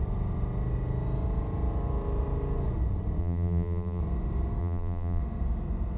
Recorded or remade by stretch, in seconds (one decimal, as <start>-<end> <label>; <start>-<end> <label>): 0.0-3.2 recorded; 3.2-4.0 remade; 4.0-4.6 recorded; 4.6-5.2 remade; 5.2-6.0 recorded